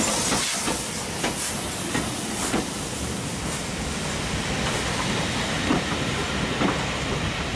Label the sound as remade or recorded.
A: recorded